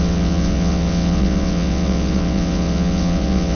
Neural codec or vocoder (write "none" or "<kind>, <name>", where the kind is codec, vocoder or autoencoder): vocoder, WaveNeXt